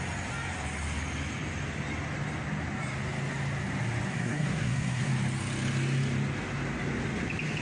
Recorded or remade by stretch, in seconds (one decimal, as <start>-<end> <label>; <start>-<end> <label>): 0.0-4.1 recorded; 4.1-5.1 remade; 5.1-7.6 recorded